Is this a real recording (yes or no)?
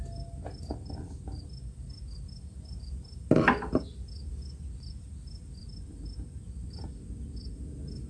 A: yes